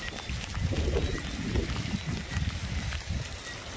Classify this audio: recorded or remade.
recorded